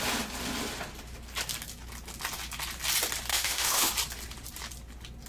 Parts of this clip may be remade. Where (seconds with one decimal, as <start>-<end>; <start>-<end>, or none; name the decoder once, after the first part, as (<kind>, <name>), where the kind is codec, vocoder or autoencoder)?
3.3-3.9 (autoencoder, DAC-VAE)